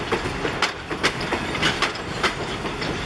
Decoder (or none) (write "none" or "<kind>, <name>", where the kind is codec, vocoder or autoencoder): none